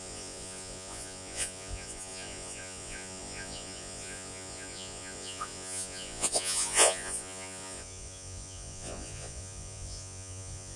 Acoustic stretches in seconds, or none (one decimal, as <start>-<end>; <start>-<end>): none